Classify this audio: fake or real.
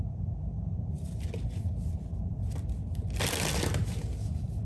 real